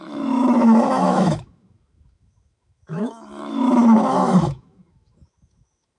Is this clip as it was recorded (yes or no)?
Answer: no